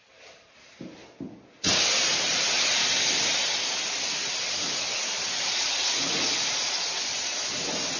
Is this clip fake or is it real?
real